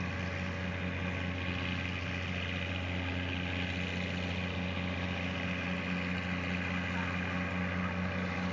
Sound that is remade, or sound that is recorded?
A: recorded